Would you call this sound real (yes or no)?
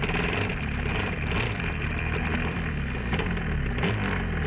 yes